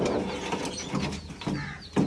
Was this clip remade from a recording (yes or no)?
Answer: no